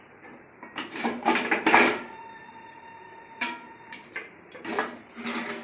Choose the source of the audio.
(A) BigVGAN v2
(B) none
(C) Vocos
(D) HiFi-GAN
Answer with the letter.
A